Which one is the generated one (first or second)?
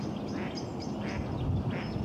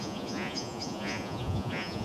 second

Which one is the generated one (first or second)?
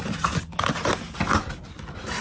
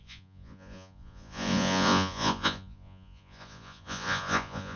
second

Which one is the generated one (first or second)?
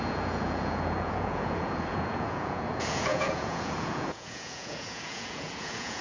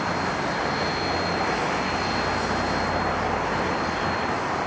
first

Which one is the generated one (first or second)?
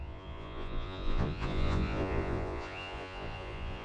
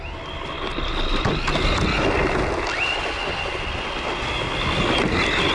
first